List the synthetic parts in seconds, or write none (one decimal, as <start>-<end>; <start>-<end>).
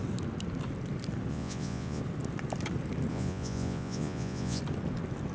1.3-2.0; 3.1-4.6